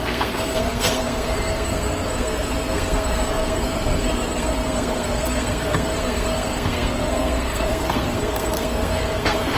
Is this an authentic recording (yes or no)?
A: no